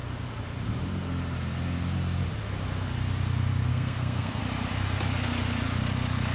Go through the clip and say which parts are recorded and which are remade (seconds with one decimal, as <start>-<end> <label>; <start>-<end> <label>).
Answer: 0.0-3.7 recorded; 3.7-4.4 remade; 4.4-6.3 recorded